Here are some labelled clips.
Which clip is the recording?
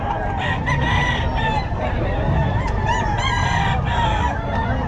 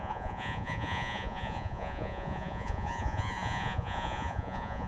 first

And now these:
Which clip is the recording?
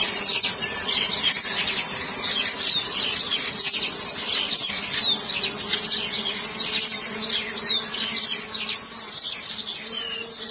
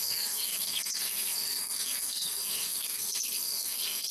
first